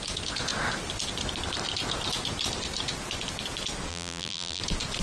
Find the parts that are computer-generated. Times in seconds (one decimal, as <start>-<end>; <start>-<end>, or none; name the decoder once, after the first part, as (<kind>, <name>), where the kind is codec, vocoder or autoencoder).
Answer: 3.9-4.6 (vocoder, BigVGAN v2)